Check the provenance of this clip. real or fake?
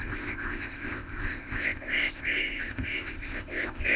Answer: fake